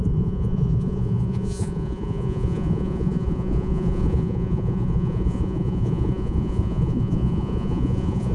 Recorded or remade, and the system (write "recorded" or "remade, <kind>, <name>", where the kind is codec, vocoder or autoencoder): remade, vocoder, Vocos